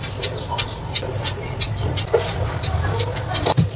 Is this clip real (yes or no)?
yes